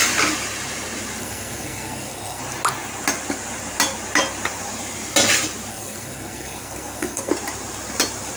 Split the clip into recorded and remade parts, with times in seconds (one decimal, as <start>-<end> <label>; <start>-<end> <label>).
0.0-1.2 recorded; 1.2-2.4 remade; 2.4-5.7 recorded; 5.7-7.3 remade; 7.3-8.4 recorded